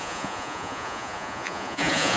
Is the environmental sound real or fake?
fake